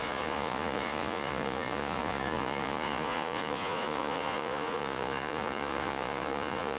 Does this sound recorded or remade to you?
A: remade